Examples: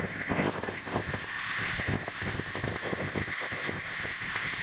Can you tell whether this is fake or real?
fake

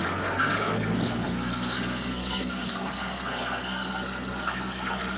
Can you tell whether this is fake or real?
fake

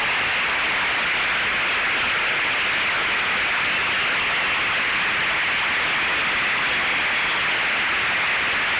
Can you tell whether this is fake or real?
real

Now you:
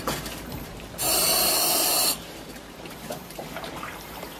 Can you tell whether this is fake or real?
fake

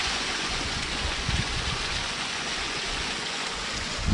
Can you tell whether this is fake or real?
fake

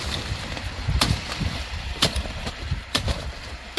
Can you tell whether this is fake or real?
real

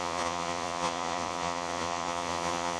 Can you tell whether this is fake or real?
fake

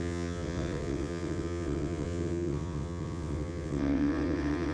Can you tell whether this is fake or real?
fake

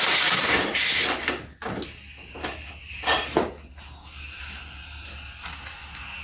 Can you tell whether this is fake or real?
real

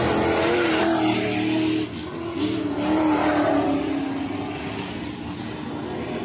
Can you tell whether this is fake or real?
real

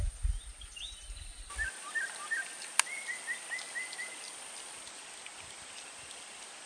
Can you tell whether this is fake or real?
real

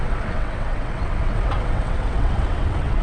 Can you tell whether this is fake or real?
fake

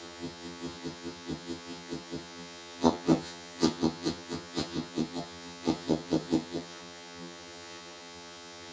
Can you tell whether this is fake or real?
fake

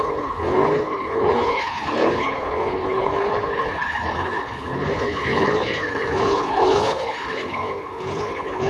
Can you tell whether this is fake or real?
fake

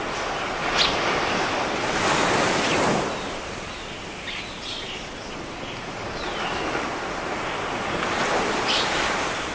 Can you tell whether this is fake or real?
real